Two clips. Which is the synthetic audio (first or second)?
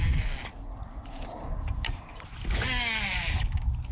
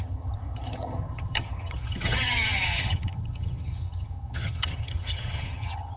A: second